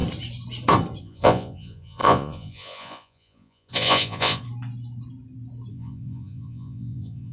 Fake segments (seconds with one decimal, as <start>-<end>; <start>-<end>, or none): 1.0-4.4; 5.7-7.3